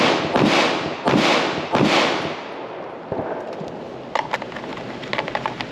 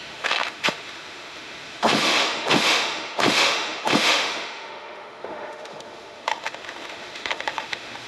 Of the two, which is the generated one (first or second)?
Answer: second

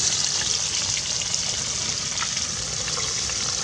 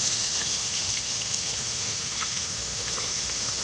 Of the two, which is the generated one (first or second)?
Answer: second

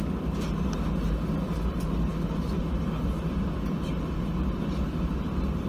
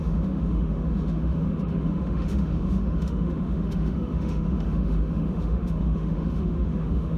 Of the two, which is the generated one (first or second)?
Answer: second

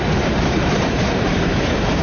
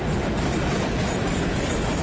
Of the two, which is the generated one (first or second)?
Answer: first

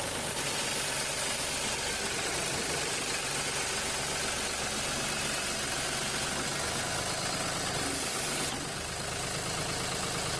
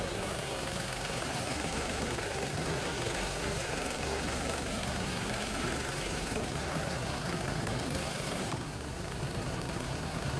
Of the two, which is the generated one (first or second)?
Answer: second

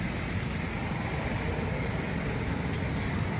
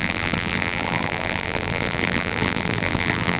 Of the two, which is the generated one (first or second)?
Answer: second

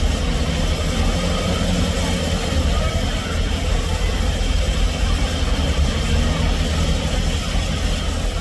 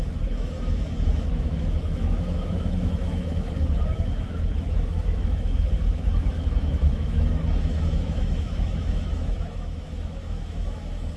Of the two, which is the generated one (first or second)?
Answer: second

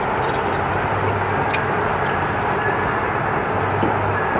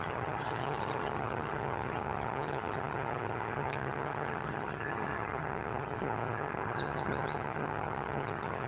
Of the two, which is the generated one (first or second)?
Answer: second